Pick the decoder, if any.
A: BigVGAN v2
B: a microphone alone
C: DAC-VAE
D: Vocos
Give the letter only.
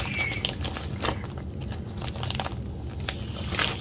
B